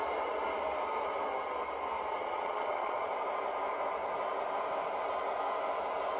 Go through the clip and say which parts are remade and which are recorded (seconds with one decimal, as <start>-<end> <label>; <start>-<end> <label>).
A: 0.0-2.2 recorded; 2.2-3.1 remade; 3.1-6.2 recorded